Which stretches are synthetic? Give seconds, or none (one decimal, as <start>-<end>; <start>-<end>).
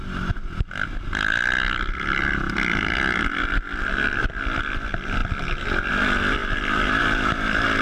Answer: 0.0-4.2; 5.2-5.9